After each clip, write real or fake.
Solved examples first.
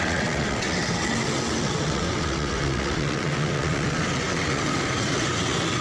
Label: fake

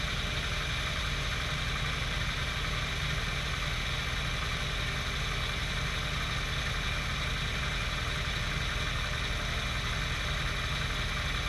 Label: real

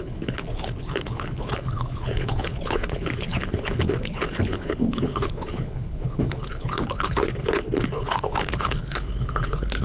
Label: fake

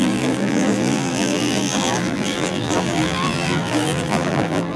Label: fake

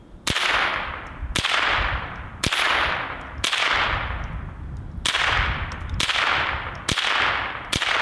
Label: fake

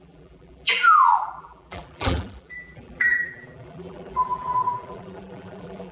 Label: fake